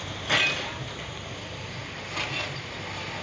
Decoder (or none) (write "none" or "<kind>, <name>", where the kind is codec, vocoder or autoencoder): none